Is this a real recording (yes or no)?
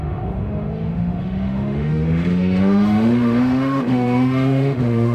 no